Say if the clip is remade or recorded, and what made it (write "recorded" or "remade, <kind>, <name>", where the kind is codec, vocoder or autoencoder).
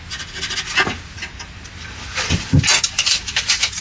recorded